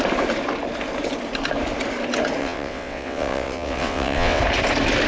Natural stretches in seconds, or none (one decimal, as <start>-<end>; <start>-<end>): 0.0-2.4; 4.4-5.1